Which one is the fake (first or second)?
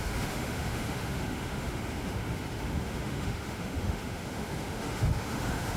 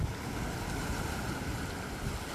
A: first